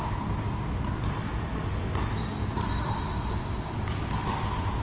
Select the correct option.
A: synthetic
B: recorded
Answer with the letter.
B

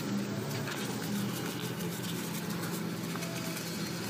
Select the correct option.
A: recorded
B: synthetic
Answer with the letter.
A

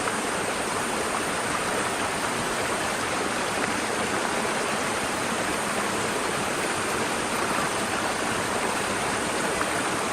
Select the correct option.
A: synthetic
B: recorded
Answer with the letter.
A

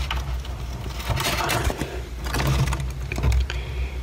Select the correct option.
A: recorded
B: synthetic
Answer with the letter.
A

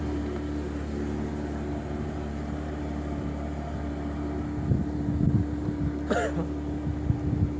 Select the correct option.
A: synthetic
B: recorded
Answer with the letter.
B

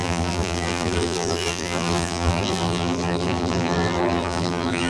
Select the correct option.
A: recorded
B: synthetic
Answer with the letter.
B